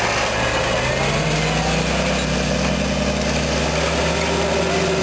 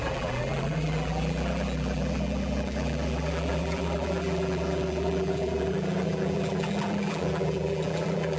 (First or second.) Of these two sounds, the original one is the first